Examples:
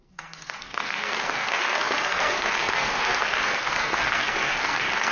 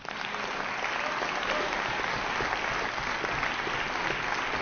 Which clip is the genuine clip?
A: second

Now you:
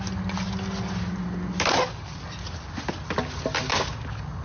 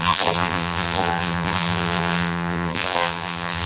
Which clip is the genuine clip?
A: first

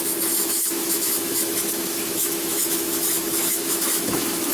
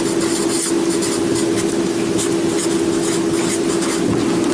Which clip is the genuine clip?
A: second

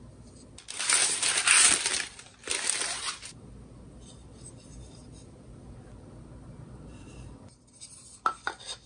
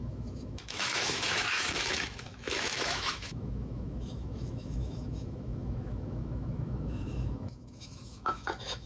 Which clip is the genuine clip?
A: first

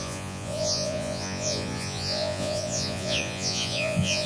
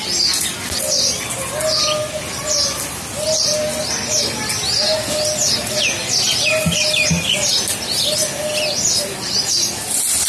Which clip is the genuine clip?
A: second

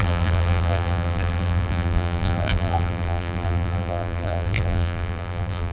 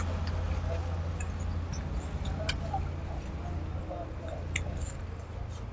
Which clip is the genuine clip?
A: second